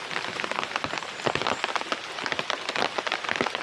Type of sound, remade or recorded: recorded